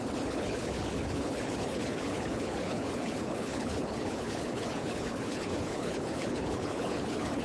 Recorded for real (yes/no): no